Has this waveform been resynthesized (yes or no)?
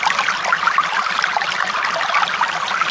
no